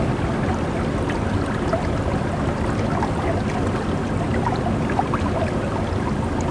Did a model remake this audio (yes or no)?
no